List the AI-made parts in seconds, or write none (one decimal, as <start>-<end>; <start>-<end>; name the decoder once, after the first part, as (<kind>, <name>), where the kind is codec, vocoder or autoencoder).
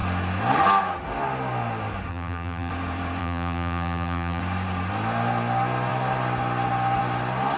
2.1-2.7 (vocoder, BigVGAN v2); 3.2-4.4